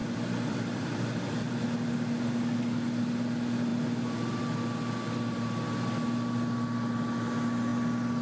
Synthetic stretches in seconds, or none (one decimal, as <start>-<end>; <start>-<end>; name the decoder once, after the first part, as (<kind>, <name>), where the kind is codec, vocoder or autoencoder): 0.0-1.6 (vocoder, BigVGAN v2)